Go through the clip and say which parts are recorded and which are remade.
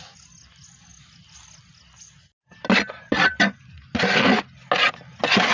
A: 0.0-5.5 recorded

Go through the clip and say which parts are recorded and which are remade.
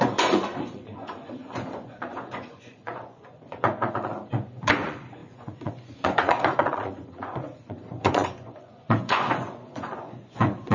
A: 0.0-10.7 remade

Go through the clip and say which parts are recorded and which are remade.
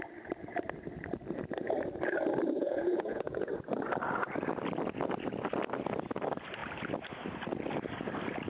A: 0.0-2.6 recorded; 2.6-3.5 remade; 3.5-8.5 recorded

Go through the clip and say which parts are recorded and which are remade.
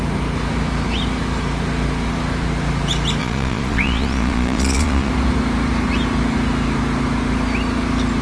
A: 0.0-3.2 recorded; 3.2-5.1 remade; 5.1-8.2 recorded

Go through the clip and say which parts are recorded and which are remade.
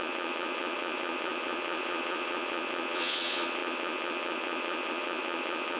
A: 0.0-5.8 remade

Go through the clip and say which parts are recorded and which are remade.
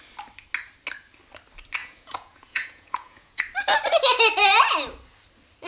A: 0.0-1.8 recorded; 1.8-3.4 remade; 3.4-5.7 recorded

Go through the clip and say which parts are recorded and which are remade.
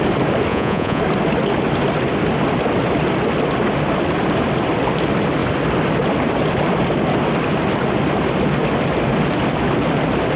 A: 0.0-0.5 recorded; 0.5-1.0 remade; 1.0-10.4 recorded